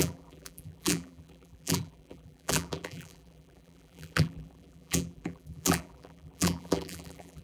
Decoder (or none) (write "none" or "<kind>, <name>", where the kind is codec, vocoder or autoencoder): vocoder, BigVGAN v2